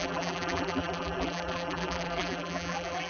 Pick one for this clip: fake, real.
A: fake